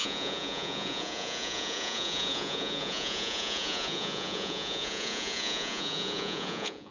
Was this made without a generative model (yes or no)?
no